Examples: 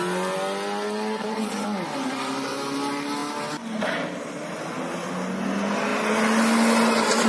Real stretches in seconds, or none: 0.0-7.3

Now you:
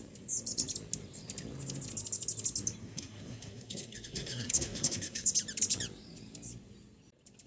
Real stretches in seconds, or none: 0.0-2.8; 5.3-7.5

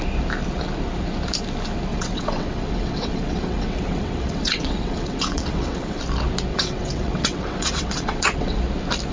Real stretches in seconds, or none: 0.0-1.9; 6.0-6.5; 8.6-9.1

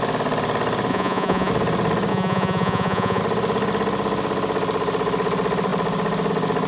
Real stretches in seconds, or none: 0.0-0.9; 1.5-2.1; 3.2-6.7

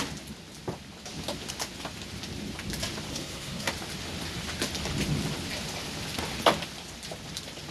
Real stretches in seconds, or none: 0.0-3.1; 3.7-7.7